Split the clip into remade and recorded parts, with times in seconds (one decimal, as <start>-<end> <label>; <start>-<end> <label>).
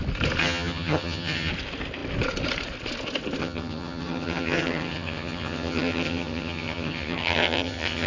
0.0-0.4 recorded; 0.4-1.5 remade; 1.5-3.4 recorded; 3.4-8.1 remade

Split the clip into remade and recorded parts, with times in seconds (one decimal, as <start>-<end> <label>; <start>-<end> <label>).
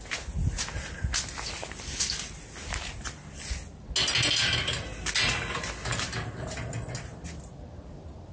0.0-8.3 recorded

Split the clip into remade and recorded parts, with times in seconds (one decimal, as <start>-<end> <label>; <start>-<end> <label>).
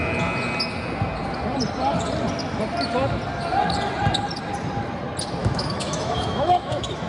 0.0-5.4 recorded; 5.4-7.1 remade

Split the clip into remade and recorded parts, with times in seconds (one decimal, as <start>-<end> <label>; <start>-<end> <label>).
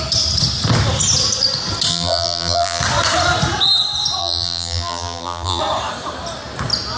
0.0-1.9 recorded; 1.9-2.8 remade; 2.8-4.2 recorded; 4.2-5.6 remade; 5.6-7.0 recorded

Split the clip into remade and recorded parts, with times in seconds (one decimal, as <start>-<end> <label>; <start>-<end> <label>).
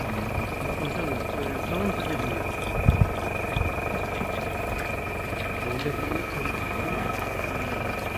0.0-5.8 recorded; 5.8-7.5 remade; 7.5-8.2 recorded